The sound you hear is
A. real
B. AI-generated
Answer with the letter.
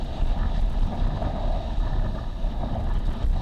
A